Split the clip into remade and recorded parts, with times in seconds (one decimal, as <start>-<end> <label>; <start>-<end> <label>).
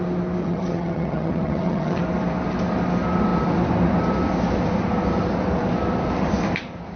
0.0-0.4 recorded; 0.4-2.0 remade; 2.0-7.0 recorded